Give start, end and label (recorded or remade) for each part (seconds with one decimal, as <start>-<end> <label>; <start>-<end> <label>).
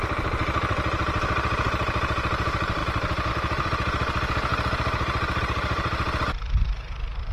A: 0.0-4.5 remade; 4.5-5.4 recorded; 5.4-7.3 remade